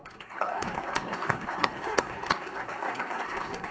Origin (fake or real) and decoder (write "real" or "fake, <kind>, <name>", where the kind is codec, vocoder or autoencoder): fake, codec, SNAC